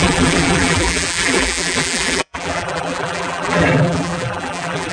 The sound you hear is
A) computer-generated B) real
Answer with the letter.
A